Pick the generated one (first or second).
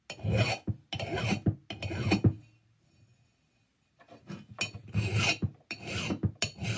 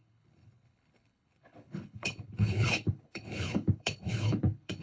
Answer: second